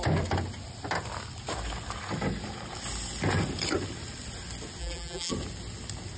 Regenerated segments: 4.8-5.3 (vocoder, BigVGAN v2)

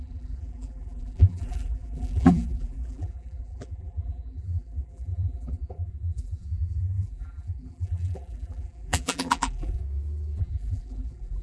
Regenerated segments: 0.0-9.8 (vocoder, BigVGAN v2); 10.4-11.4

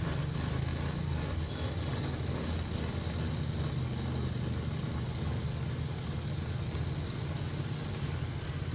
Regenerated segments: none

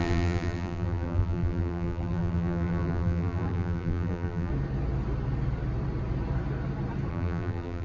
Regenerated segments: 0.0-4.5 (vocoder, BigVGAN v2); 7.1-7.8

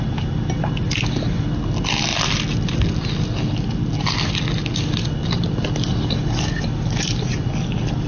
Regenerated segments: none

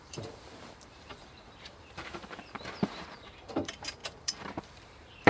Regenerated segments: 0.0-5.3 (vocoder, BigVGAN v2)